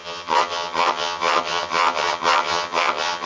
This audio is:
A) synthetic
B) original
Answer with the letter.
A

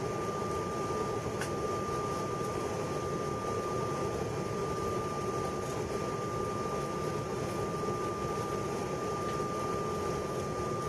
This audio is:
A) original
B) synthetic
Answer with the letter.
A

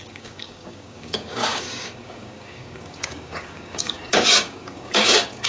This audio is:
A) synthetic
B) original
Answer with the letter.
A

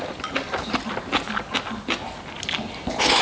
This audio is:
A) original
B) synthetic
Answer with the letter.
A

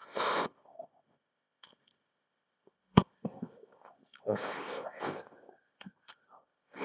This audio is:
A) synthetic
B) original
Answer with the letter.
A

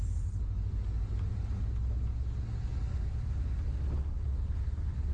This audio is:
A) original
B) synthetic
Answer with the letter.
A